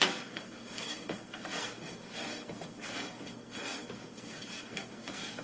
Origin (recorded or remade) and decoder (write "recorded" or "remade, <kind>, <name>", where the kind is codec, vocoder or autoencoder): remade, codec, SNAC